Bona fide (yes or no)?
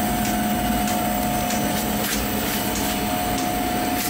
yes